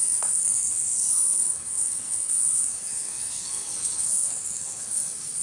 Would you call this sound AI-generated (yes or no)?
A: yes